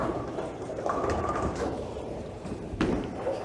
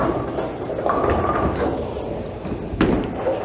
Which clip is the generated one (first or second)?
first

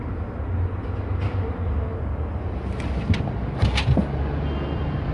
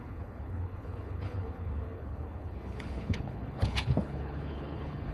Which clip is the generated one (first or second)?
second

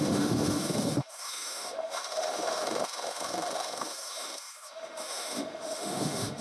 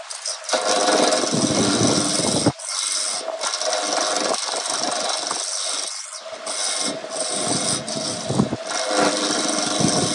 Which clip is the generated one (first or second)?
first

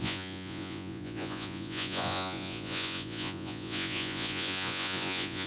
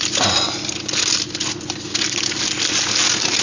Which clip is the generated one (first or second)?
first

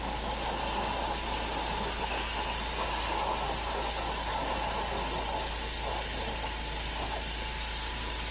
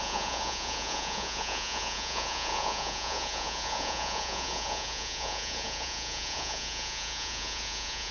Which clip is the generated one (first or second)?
second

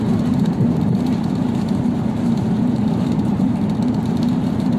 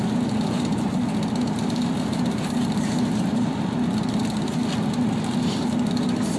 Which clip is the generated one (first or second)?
first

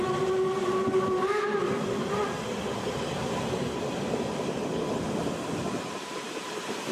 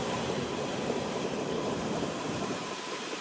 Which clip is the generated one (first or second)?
second